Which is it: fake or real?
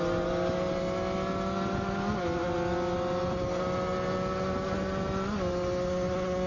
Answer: real